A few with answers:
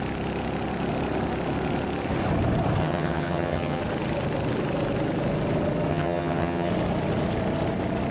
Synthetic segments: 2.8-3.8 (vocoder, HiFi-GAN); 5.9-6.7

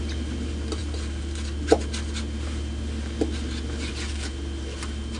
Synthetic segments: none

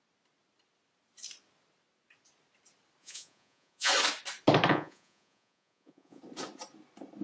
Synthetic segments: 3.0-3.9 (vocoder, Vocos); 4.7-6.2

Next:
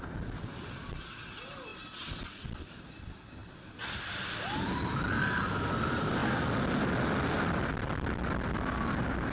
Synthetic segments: none

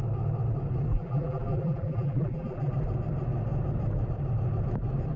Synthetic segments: 0.9-2.7 (vocoder, BigVGAN v2)